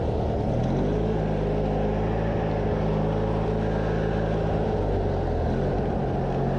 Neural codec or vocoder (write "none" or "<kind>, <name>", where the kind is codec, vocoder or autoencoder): none